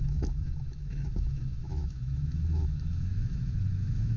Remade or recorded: remade